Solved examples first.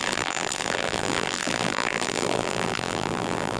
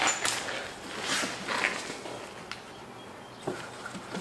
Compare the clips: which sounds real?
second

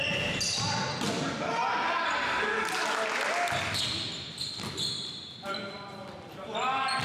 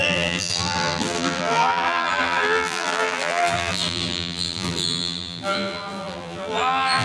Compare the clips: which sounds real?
first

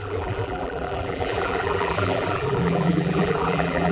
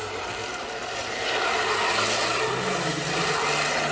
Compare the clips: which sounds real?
second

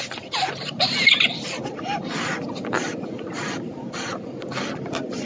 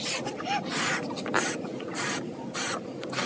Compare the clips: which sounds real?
second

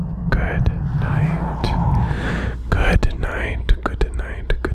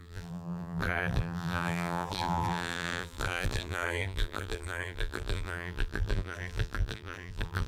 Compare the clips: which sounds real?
first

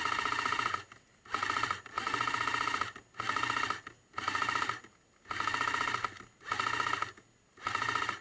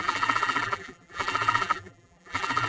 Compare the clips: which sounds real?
first